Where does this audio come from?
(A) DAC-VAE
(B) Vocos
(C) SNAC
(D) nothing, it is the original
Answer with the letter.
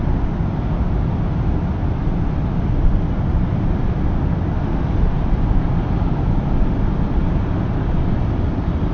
D